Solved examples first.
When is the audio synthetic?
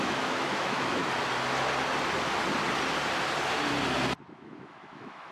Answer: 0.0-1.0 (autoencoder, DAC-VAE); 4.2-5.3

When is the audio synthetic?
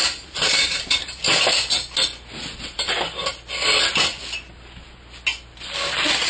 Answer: 0.0-1.2 (vocoder, BigVGAN v2)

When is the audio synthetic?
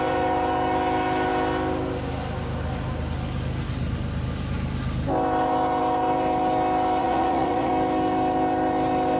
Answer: 7.0-7.7 (vocoder, Vocos)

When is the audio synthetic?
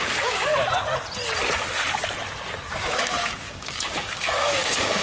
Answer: 0.0-0.5 (codec, DAC); 2.7-5.0